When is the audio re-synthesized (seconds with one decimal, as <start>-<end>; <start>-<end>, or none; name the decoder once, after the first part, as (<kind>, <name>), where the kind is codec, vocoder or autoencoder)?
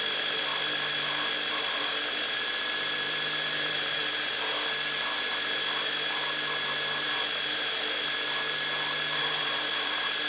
0.0-0.5 (vocoder, BigVGAN v2); 1.5-4.0; 9.2-10.3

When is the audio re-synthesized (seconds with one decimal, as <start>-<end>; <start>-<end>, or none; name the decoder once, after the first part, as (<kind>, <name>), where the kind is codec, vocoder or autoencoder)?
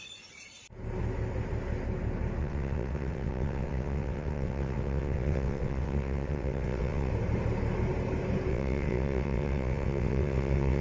2.4-7.1 (vocoder, WaveNeXt); 8.5-10.8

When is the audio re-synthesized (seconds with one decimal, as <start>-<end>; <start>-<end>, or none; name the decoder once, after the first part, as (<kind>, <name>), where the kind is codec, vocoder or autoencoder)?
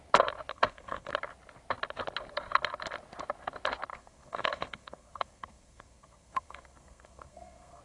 0.5-1.1 (codec, SNAC); 3.9-7.8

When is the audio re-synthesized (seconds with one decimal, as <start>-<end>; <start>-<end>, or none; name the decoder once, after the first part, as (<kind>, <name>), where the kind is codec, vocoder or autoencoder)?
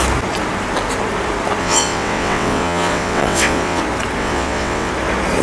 1.6-3.8 (vocoder, WaveNeXt); 4.2-4.9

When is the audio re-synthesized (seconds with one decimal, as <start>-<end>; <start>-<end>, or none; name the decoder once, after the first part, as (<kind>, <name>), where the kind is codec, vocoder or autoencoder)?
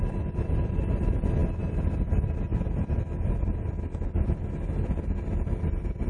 none